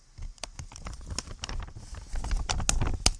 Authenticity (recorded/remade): recorded